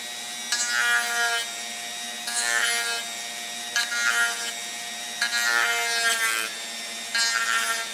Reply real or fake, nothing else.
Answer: real